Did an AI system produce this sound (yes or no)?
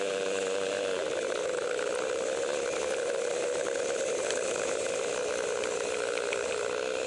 yes